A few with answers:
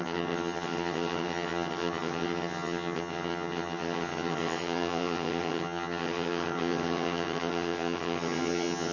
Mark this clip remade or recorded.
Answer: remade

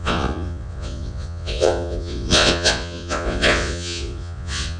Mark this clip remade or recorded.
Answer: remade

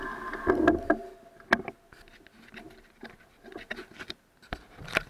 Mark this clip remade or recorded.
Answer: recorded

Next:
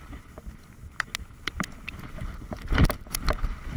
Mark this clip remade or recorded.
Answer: recorded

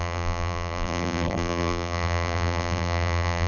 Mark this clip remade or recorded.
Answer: remade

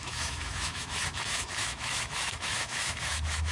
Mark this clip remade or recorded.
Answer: remade